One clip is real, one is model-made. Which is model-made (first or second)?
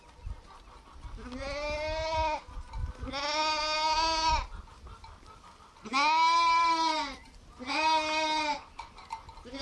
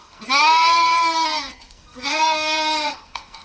second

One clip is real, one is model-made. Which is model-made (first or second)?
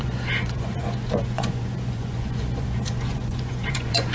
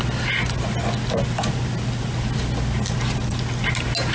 first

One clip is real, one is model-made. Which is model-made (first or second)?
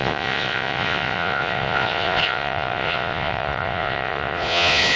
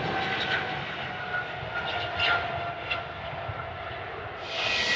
first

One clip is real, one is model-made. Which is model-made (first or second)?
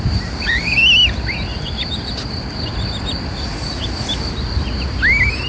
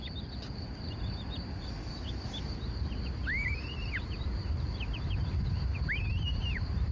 second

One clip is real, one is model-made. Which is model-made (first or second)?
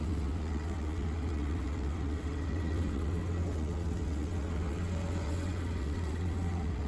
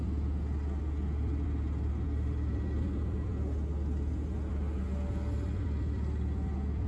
first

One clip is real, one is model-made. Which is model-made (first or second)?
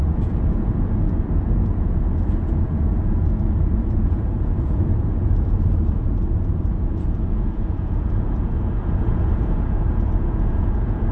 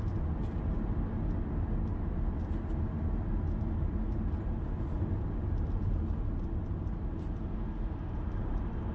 first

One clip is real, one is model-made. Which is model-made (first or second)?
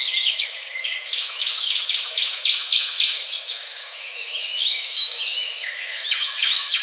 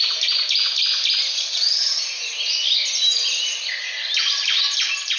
first